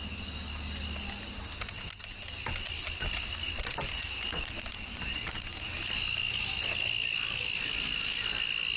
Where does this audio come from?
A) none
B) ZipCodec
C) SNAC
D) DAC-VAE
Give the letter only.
A